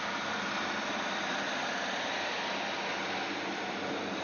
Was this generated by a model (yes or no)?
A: no